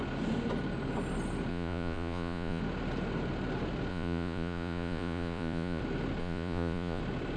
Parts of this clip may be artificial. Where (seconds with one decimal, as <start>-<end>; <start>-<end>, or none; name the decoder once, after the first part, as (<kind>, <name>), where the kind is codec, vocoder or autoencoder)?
1.5-2.6 (vocoder, Vocos); 3.9-5.8; 6.2-7.0